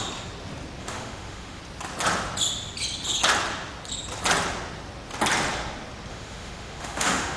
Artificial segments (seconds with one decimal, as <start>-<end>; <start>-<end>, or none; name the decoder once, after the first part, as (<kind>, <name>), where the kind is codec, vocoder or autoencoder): 0.8-1.6 (autoencoder, DAC-VAE); 6.1-7.4